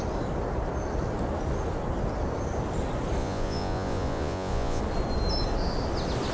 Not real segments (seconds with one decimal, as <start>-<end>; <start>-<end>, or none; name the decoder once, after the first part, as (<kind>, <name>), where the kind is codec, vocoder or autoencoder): 3.2-4.8 (vocoder, Vocos)

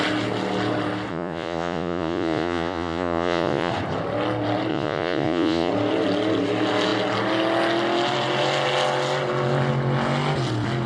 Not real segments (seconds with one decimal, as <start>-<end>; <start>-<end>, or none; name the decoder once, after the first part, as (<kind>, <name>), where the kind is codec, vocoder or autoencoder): 1.1-3.7 (vocoder, Vocos); 4.7-5.7

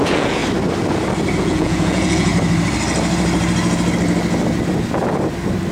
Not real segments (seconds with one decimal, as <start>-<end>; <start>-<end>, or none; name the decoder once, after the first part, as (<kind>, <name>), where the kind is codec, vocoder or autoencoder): 0.0-0.4 (vocoder, Vocos); 1.4-2.3

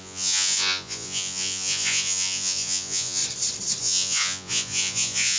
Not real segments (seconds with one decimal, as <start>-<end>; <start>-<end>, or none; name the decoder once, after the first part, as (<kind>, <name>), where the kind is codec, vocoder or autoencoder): 0.0-3.2 (vocoder, Vocos); 3.8-5.4

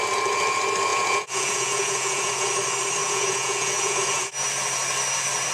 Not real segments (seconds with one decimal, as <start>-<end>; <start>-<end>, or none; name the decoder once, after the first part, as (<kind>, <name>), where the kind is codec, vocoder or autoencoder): 0.9-2.5 (vocoder, Vocos); 3.0-4.3

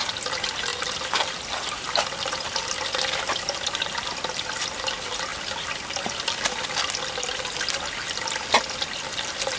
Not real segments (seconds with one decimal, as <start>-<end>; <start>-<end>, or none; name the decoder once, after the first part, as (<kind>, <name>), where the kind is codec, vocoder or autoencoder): none

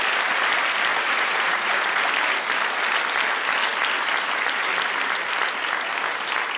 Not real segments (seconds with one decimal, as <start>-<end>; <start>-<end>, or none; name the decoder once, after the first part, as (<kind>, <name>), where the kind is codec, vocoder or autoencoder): 0.9-2.0 (vocoder, Vocos)

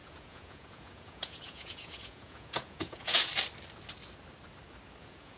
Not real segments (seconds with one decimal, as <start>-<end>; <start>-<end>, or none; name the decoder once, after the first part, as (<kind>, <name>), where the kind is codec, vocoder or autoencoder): 0.0-3.3 (vocoder, Vocos); 5.0-5.4